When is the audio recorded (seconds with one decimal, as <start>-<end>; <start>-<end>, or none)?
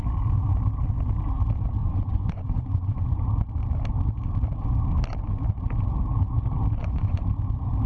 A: 0.0-1.8; 3.2-6.8; 7.3-7.9